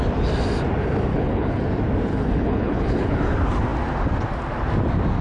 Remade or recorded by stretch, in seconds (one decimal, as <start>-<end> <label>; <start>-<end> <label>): 0.0-1.1 recorded; 1.1-1.6 remade; 1.6-2.1 recorded; 2.1-3.2 remade; 3.2-5.2 recorded